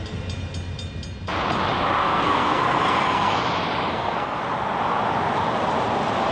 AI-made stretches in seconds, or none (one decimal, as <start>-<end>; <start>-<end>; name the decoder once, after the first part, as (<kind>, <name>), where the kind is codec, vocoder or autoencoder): 2.0-3.4 (codec, SNAC); 3.9-4.4